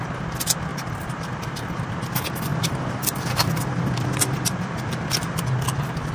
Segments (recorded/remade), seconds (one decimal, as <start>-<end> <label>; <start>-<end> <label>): 0.0-0.7 recorded; 0.7-1.4 remade; 1.4-2.5 recorded; 2.5-5.4 remade; 5.4-6.1 recorded